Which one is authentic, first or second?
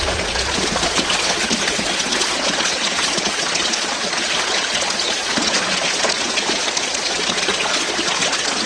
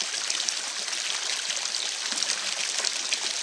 second